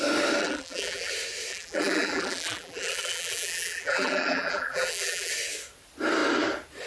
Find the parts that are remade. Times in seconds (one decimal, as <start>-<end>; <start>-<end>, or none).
0.4-1.1; 1.5-5.3